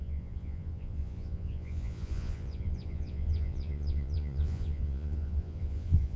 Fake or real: fake